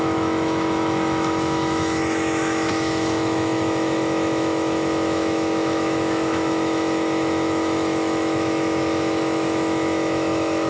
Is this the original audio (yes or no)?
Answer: no